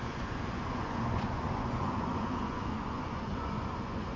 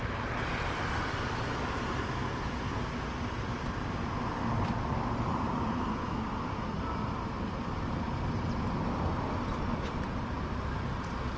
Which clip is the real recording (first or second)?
second